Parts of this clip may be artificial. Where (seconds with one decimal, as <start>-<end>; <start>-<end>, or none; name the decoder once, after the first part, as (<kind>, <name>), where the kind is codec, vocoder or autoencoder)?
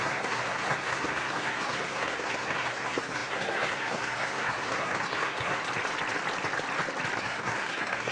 0.0-5.6 (codec, SNAC); 7.2-8.1